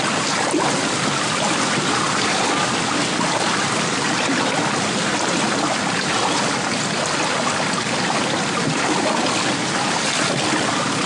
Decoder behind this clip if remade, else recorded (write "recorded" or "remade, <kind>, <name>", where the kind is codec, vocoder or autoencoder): recorded